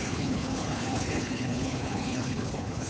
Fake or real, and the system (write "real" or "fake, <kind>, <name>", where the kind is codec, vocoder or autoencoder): fake, codec, HILCodec